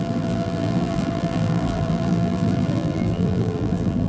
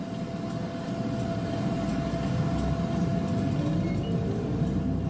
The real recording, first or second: second